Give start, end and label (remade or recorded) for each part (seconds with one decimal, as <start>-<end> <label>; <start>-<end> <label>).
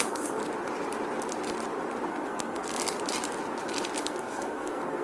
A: 0.0-0.4 remade; 0.4-2.1 recorded; 2.1-2.8 remade; 2.8-4.0 recorded; 4.0-5.0 remade